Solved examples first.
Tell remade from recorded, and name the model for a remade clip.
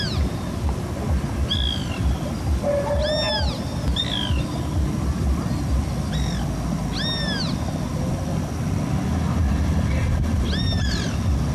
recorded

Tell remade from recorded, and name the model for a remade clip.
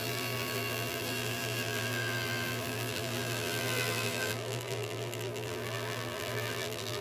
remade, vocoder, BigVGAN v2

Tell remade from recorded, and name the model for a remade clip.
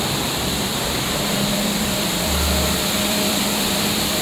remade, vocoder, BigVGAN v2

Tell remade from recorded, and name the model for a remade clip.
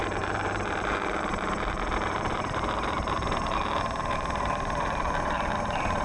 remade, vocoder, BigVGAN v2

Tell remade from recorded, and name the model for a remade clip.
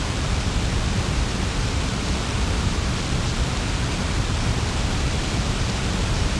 remade, vocoder, BigVGAN v2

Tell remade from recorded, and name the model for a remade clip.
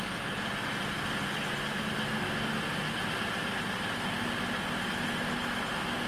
recorded